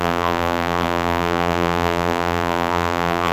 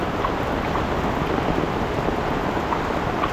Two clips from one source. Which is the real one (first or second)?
second